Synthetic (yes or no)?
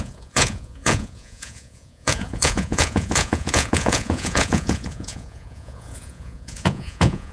yes